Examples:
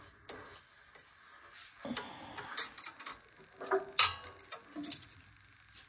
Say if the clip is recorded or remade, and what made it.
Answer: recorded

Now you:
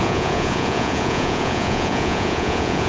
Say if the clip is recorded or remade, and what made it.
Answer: remade, vocoder, Vocos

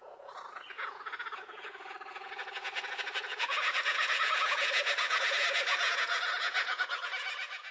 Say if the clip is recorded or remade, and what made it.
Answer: remade, vocoder, Vocos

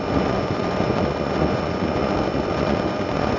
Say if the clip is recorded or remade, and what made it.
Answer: remade, vocoder, Vocos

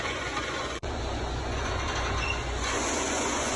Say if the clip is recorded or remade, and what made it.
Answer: remade, vocoder, Vocos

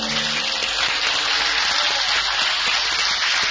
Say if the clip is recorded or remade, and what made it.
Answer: recorded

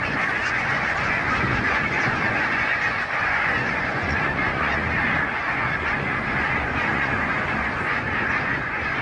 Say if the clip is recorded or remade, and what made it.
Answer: remade, vocoder, Vocos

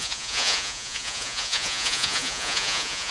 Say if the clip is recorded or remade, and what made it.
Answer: remade, vocoder, Vocos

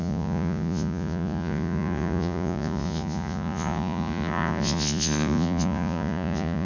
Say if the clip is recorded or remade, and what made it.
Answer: remade, vocoder, Vocos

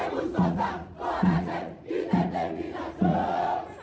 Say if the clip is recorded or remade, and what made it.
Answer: remade, vocoder, Vocos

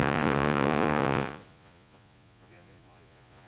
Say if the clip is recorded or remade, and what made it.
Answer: remade, vocoder, Vocos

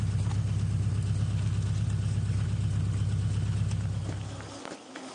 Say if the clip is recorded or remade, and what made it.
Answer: recorded